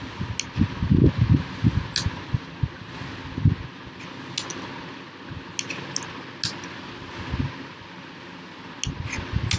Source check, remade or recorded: recorded